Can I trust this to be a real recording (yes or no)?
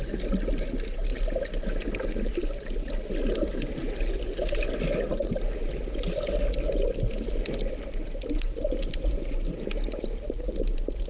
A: yes